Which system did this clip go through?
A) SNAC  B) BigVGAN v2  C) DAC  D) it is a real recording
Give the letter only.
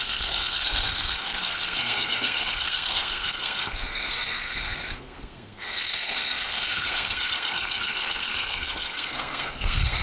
A